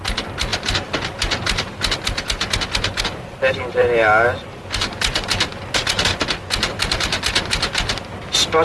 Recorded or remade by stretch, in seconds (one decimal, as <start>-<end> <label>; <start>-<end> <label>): 0.0-8.6 recorded